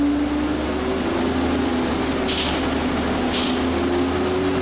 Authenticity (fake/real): real